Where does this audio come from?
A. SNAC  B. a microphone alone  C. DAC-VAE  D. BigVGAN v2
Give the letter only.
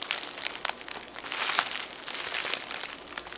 D